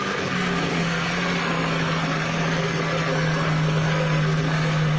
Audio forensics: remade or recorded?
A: remade